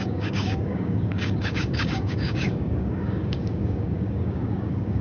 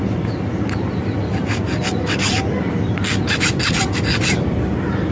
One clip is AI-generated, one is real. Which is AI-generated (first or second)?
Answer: first